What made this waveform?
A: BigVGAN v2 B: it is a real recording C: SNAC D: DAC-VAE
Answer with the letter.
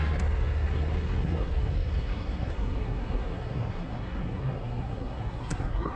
C